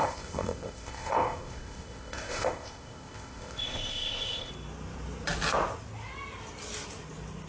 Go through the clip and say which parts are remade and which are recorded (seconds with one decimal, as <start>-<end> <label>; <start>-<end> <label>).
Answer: 0.0-4.5 remade; 4.5-7.5 recorded